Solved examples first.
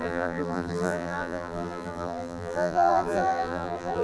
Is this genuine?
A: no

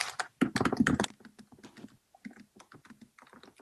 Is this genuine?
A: yes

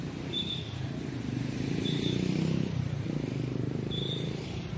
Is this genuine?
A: no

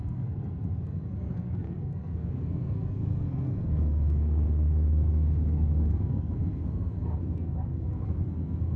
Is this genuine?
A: no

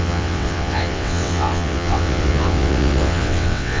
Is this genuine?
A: no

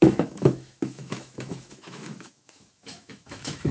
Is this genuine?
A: no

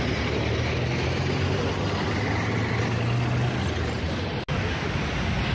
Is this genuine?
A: yes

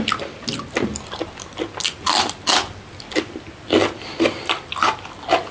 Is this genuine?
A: yes